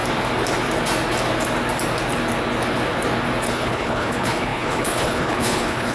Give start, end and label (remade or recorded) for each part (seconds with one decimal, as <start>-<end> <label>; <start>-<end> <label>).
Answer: 0.0-3.5 recorded; 3.5-5.9 remade